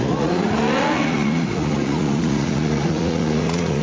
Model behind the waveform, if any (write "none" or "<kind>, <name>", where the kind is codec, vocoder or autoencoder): vocoder, Vocos